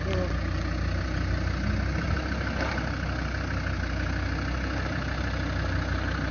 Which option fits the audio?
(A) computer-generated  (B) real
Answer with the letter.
B